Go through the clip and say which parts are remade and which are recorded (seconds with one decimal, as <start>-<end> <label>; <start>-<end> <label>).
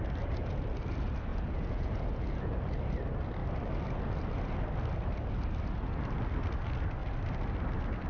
0.0-1.3 recorded; 1.3-2.6 remade; 2.6-8.1 recorded